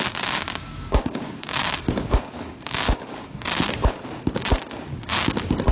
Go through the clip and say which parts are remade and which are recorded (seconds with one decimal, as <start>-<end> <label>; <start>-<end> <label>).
0.0-0.6 recorded; 0.6-4.0 remade; 4.0-5.7 recorded